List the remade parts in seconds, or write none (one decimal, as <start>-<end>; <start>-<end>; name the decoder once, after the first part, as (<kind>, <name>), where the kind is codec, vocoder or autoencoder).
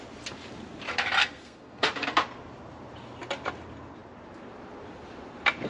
1.2-1.9 (codec, SNAC)